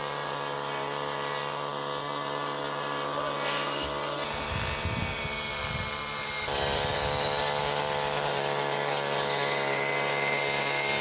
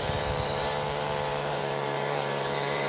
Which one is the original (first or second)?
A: first